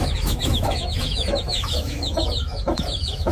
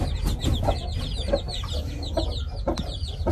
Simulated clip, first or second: first